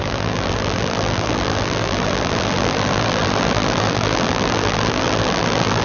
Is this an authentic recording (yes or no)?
no